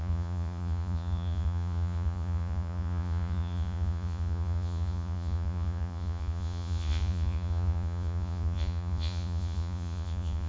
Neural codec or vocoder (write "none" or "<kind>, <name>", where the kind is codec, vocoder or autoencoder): vocoder, Vocos